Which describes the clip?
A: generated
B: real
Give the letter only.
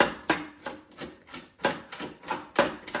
A